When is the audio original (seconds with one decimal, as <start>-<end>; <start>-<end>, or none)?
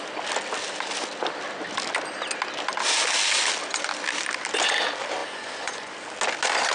0.0-5.2; 5.9-6.7